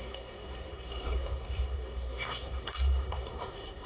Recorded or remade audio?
remade